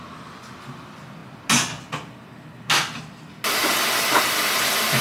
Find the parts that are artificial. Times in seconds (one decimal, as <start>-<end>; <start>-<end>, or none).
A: none